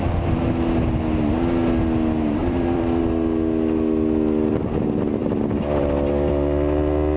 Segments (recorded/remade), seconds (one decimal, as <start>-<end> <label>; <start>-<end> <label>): 0.0-2.4 recorded; 2.4-3.0 remade; 3.0-7.2 recorded